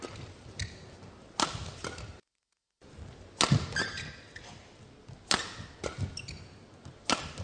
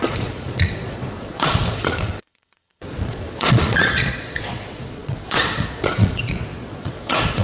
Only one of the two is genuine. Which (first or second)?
first